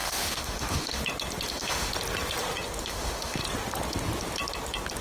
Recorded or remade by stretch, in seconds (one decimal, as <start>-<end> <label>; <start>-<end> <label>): 0.0-1.0 remade; 1.0-1.5 recorded; 1.5-1.9 remade; 1.9-2.8 recorded; 2.8-3.4 remade; 3.4-5.0 recorded